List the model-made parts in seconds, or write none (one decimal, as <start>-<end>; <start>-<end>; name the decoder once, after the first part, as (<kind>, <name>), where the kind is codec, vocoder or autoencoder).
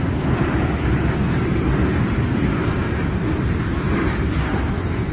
1.8-5.1 (vocoder, BigVGAN v2)